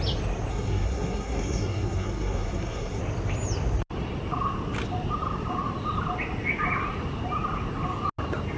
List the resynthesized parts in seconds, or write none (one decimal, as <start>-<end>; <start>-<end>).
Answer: 0.5-3.0